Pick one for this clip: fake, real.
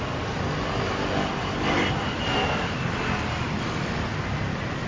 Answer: real